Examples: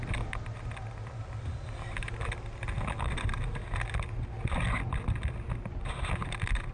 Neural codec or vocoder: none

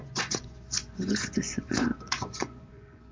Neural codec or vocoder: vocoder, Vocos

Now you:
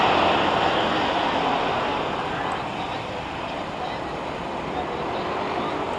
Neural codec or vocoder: none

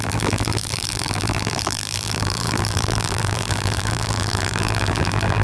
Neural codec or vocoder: vocoder, BigVGAN v2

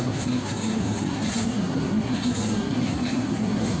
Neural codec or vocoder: codec, SNAC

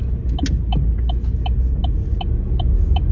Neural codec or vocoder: none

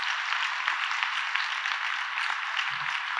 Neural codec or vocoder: none